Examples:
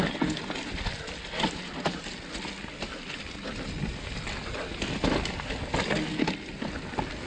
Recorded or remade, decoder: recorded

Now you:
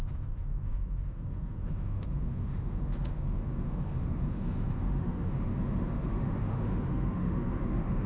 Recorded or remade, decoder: remade, autoencoder, DAC-VAE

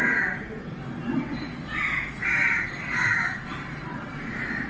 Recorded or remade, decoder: recorded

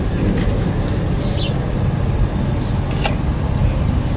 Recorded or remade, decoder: recorded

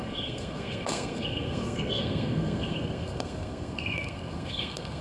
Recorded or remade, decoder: remade, codec, SNAC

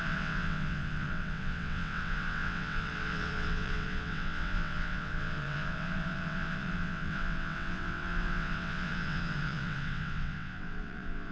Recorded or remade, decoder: remade, vocoder, WaveNeXt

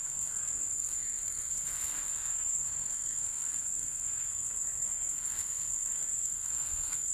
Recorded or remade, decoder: remade, codec, SNAC